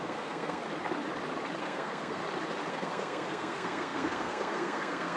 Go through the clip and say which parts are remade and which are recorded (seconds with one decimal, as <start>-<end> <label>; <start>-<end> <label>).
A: 0.0-0.6 remade; 0.6-1.6 recorded; 1.6-2.2 remade; 2.2-2.7 recorded; 2.7-5.2 remade